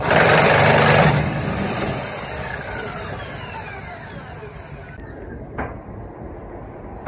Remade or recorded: recorded